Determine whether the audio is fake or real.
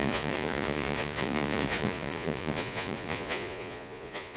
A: fake